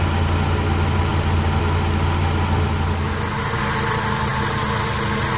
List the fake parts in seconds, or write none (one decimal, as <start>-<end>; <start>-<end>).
none

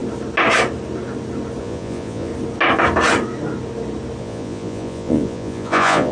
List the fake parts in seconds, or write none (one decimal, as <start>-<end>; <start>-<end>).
1.6-2.3; 4.2-6.1

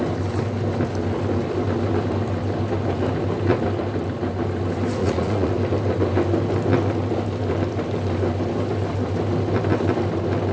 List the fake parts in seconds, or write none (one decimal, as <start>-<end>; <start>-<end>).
5.0-5.5

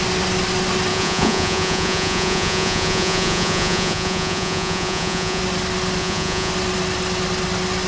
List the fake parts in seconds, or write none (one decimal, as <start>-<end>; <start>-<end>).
0.9-5.4; 6.0-6.5

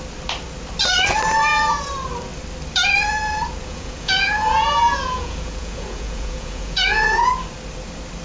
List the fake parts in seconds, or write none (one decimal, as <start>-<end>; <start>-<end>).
3.6-7.3

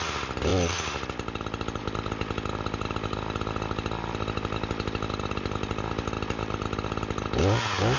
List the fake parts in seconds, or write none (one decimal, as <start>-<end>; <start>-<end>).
none

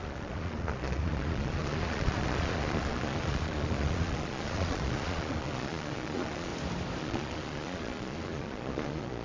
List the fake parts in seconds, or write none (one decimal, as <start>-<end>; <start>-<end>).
0.0-6.5; 7.0-9.2